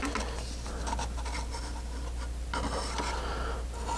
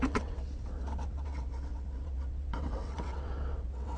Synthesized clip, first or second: second